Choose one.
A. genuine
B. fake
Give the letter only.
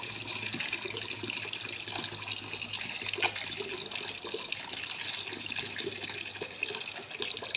A